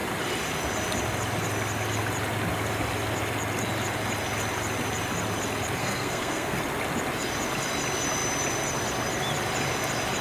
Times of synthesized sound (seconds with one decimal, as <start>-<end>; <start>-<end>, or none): 5.8-6.6